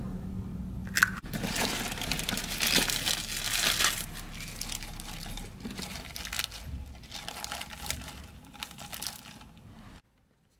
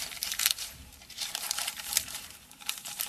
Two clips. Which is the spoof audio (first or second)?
second